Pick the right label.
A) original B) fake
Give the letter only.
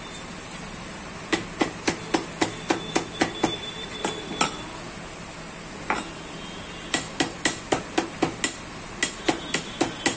A